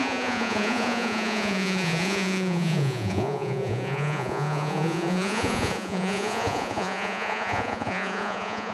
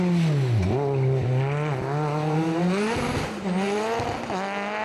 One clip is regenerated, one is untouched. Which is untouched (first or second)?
second